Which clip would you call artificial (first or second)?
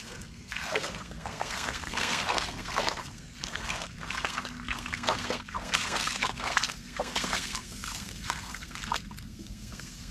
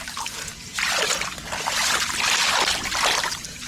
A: first